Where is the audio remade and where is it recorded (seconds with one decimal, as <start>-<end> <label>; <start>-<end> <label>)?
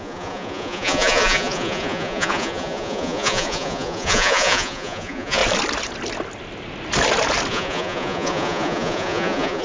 0.0-5.4 remade; 5.4-7.5 recorded; 7.5-9.6 remade